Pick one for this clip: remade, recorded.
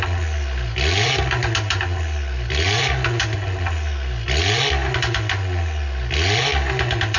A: recorded